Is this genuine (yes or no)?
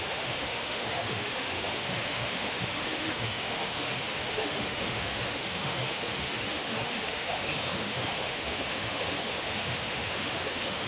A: no